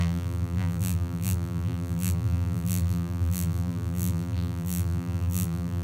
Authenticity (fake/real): fake